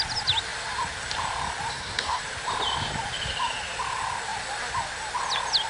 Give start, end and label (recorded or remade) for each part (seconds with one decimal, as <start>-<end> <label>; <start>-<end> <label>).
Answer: 0.0-1.7 recorded; 1.7-2.2 remade; 2.2-5.7 recorded

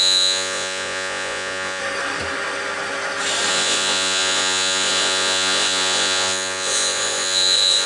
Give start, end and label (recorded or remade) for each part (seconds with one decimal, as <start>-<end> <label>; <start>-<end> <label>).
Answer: 0.0-1.8 remade; 1.8-3.5 recorded; 3.5-7.9 remade

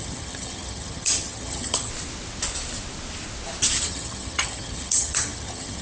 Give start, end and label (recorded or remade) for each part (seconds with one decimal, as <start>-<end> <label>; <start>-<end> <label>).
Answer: 0.0-1.9 remade; 1.9-3.8 recorded; 3.8-5.8 remade

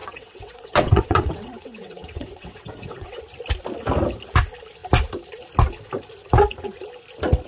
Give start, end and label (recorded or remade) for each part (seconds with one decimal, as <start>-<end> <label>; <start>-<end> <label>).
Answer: 0.0-3.2 remade; 3.2-7.5 recorded